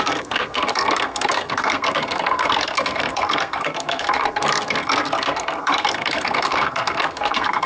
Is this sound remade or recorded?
remade